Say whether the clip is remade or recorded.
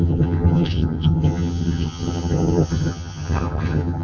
remade